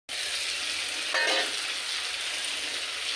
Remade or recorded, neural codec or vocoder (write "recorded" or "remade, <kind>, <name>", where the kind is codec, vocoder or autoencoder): recorded